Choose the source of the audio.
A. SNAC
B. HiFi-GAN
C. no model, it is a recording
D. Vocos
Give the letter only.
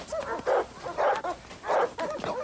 C